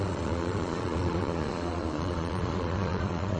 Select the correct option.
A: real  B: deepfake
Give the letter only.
B